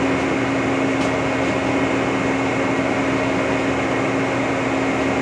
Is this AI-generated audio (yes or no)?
no